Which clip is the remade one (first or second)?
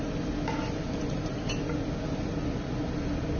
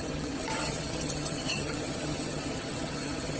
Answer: second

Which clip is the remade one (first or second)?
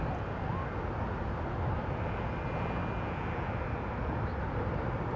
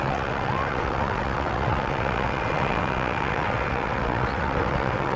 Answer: second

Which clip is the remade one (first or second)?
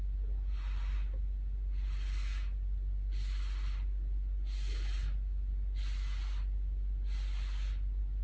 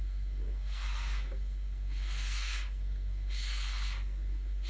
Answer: second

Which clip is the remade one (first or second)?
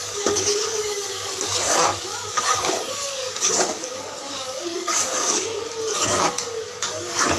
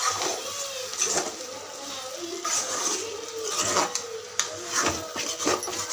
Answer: first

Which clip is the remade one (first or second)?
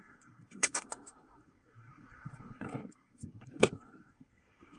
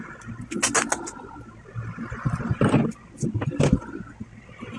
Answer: first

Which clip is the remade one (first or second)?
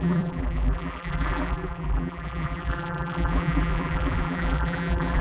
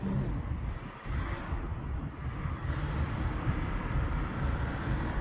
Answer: first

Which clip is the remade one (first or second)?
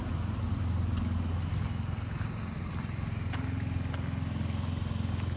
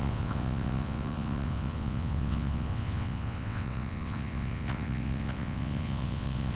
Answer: second